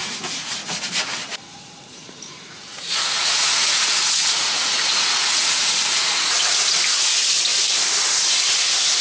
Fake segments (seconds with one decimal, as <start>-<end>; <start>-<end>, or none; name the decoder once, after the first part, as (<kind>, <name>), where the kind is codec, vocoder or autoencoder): 0.0-0.9 (vocoder, Vocos); 1.3-6.3